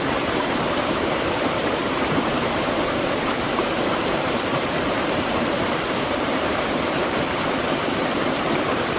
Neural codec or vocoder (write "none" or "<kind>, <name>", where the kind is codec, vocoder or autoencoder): vocoder, BigVGAN v2